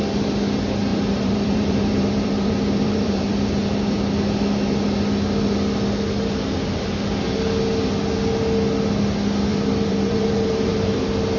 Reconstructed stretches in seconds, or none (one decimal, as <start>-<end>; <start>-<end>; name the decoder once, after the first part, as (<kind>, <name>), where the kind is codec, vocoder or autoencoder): 0.9-3.3 (vocoder, BigVGAN v2); 9.5-11.0